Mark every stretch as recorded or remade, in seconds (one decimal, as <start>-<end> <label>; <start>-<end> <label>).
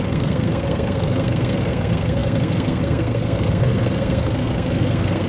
0.0-5.3 remade